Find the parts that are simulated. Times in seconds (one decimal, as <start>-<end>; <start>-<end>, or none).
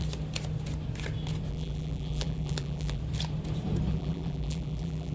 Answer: 1.5-3.0; 3.9-5.1